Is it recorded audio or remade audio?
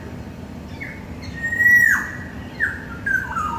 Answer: recorded